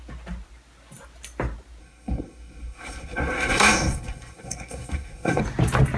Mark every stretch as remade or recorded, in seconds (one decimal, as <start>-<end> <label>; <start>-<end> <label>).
0.0-1.8 recorded; 1.8-5.4 remade; 5.4-6.0 recorded